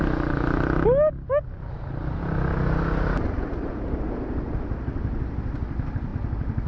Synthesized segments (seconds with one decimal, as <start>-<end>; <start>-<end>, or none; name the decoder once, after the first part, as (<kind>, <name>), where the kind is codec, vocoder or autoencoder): none